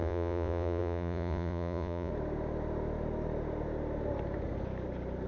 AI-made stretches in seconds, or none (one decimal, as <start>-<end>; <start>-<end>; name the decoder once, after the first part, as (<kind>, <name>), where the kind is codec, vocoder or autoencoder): 0.0-2.1 (vocoder, Vocos)